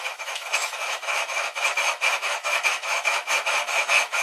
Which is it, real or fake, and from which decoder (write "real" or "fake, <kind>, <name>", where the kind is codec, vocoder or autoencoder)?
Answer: fake, autoencoder, DAC-VAE